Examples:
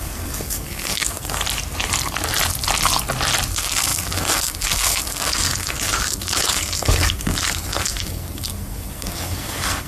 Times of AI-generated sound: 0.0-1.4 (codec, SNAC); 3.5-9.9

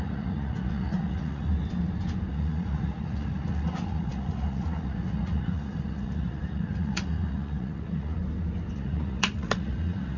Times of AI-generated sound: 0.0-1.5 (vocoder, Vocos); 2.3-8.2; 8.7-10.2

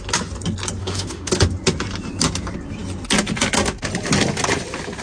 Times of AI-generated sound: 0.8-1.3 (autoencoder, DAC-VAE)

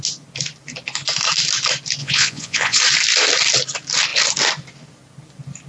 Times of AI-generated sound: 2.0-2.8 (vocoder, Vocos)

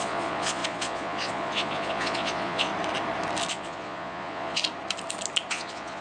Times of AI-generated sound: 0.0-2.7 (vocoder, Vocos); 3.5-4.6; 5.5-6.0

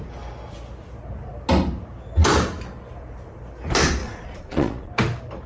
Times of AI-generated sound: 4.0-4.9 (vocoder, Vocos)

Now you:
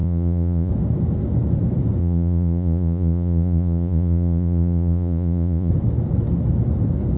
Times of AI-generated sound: 0.0-0.7 (vocoder, Vocos); 2.0-5.7

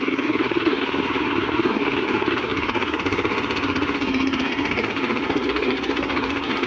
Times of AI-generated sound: 0.0-6.7 (codec, SNAC)